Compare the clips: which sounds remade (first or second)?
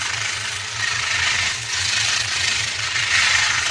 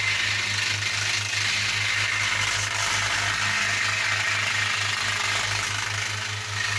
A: first